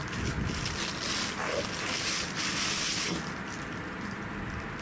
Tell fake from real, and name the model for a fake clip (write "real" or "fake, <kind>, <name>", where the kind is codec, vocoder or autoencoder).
real